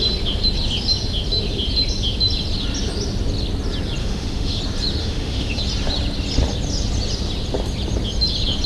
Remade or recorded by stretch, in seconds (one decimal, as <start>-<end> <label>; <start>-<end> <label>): 0.0-4.0 recorded; 4.0-4.6 remade; 4.6-5.0 recorded; 5.0-5.6 remade; 5.6-8.7 recorded